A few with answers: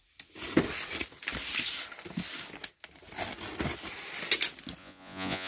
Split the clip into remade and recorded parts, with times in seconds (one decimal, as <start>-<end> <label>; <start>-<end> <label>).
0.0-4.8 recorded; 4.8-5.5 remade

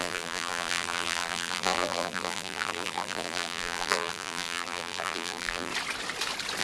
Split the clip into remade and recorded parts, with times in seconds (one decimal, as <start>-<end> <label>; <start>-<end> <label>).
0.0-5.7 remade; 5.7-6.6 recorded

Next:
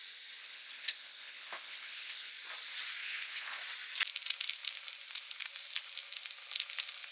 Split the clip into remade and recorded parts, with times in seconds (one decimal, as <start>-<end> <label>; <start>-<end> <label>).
0.0-0.4 recorded; 0.4-2.3 remade; 2.3-3.0 recorded; 3.0-3.6 remade; 3.6-7.1 recorded